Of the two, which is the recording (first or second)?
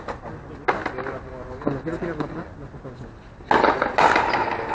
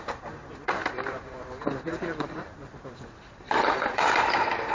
first